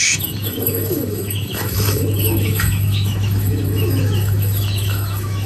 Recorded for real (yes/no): no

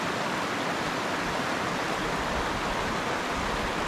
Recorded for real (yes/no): yes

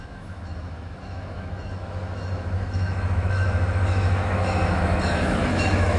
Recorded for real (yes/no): no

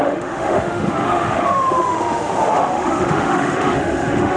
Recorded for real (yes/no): no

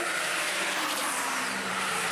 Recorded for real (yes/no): no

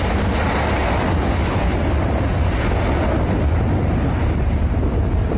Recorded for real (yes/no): yes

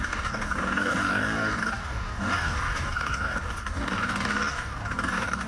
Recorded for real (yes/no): no